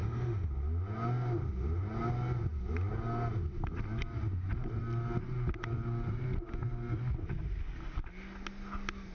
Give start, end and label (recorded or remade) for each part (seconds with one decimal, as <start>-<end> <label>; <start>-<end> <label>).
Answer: 0.0-0.5 remade; 0.5-9.1 recorded